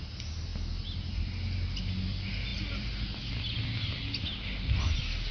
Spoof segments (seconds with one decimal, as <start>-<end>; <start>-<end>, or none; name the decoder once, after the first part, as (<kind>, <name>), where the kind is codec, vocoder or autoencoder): none